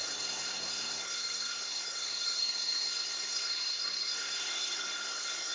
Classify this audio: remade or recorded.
remade